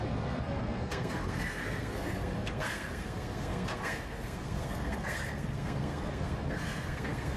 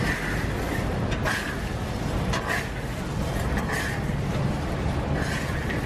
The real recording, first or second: second